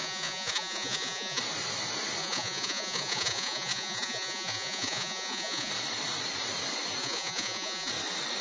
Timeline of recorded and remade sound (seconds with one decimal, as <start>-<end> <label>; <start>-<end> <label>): 0.0-1.4 remade; 1.4-2.2 recorded; 2.2-5.7 remade; 5.7-7.0 recorded; 7.0-7.9 remade; 7.9-8.4 recorded